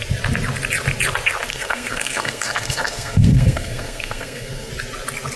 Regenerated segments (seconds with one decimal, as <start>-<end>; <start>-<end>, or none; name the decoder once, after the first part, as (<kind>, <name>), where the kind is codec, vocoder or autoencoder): 1.5-4.7 (codec, SNAC)